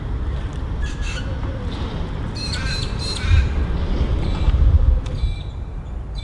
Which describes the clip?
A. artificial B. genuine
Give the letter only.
B